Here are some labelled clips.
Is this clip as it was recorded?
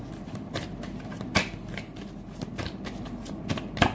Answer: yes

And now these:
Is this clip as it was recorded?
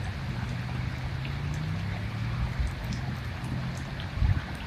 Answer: yes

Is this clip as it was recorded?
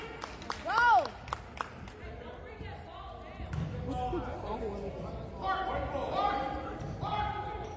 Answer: yes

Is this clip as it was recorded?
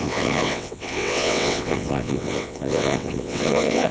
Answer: no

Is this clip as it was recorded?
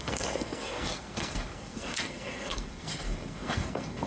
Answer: no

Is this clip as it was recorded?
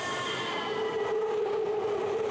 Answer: yes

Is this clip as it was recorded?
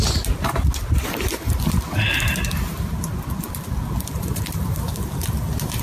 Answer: yes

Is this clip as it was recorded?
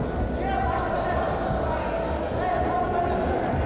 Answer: yes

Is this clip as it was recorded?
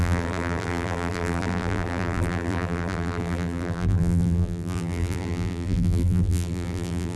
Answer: no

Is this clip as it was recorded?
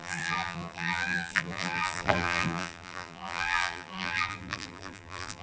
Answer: no